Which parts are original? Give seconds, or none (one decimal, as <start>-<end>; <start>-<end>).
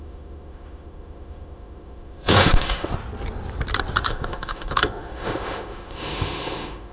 2.9-4.1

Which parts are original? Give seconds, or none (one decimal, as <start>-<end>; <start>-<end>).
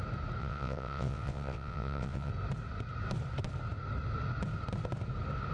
0.0-0.4; 2.3-5.5